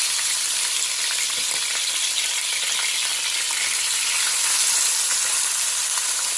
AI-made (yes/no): no